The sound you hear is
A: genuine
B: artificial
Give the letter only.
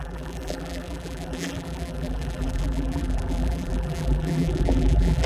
B